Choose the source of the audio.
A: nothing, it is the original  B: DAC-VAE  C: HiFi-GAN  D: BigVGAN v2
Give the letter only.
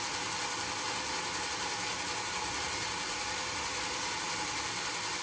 A